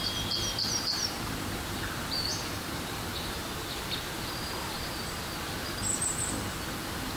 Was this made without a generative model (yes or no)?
no